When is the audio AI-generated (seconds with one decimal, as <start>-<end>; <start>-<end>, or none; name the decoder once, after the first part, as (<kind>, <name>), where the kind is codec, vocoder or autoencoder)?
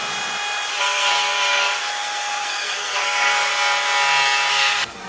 0.8-3.5 (codec, SNAC); 4.5-5.1